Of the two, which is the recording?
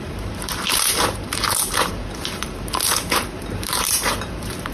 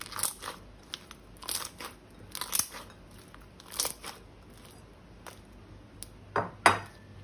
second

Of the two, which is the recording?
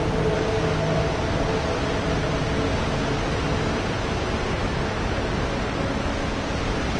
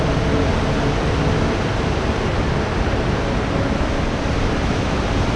first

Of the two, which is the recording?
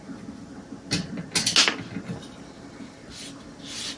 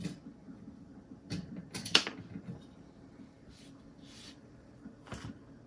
first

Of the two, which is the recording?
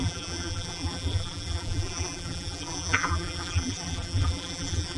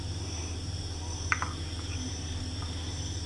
second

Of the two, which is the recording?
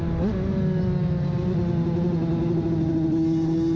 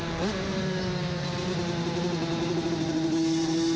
first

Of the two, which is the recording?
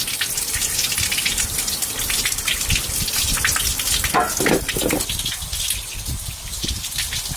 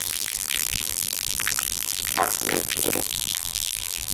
first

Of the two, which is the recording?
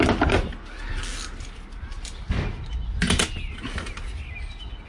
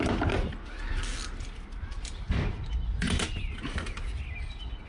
first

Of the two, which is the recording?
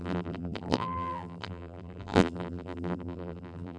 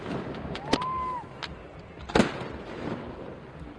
second